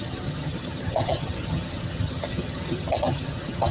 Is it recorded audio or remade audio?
remade